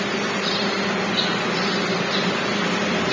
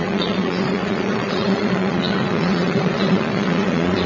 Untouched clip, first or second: first